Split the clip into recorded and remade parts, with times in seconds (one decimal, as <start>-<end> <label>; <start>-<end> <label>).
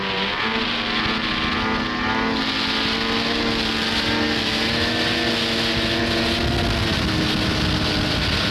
0.0-8.5 recorded